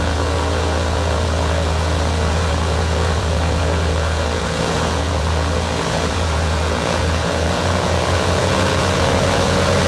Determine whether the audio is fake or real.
fake